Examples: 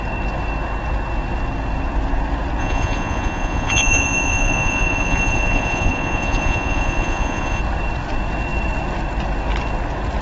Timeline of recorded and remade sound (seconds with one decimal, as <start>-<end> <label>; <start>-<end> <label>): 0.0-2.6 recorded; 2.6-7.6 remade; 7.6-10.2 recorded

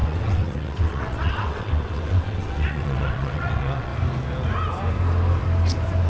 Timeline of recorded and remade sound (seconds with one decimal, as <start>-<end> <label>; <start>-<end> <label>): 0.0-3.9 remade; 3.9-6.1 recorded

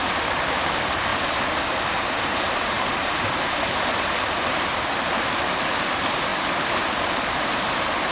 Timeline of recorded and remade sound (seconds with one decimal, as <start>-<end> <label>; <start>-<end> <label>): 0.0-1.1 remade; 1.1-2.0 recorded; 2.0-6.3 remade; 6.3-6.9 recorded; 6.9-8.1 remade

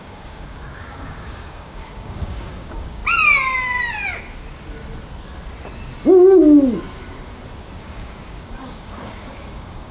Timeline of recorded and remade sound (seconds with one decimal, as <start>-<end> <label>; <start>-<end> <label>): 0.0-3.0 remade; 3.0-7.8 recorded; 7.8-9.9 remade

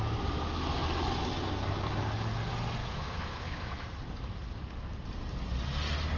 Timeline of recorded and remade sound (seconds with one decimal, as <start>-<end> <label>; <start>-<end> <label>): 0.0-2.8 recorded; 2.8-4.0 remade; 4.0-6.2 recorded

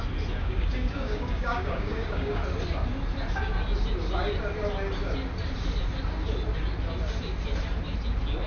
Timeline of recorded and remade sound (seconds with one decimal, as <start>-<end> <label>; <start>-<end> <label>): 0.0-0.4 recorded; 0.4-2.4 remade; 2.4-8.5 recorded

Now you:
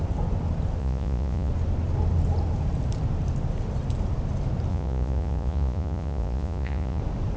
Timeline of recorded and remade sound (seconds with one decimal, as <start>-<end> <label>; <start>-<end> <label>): 0.0-0.8 recorded; 0.8-1.5 remade; 1.5-4.7 recorded; 4.7-7.0 remade; 7.0-7.4 recorded